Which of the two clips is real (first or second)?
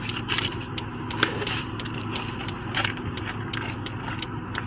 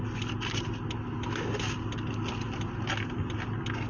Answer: second